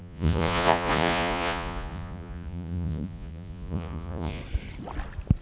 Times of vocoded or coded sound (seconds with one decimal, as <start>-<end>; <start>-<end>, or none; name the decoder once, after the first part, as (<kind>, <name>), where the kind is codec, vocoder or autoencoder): 0.0-4.4 (vocoder, Vocos)